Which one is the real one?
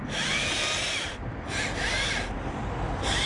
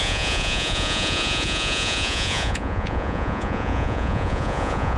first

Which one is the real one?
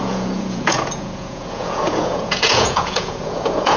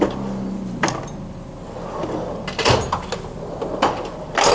second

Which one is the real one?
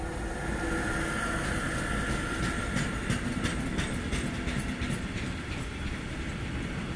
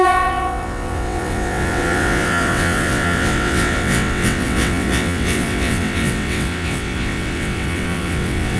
first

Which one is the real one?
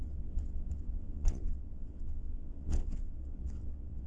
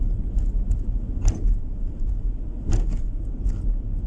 second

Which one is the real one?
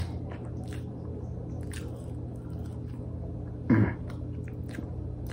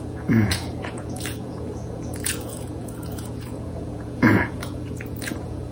first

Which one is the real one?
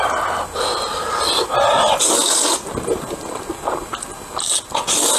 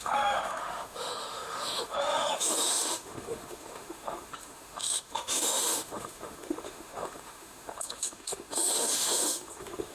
first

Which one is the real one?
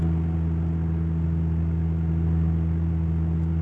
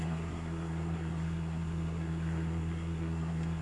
first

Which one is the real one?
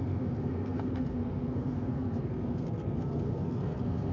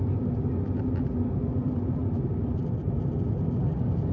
second